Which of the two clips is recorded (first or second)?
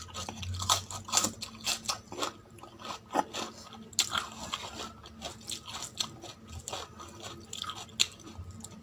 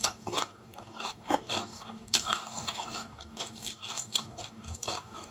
first